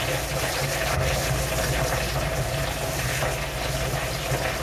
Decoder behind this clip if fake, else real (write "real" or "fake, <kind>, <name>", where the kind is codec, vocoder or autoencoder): real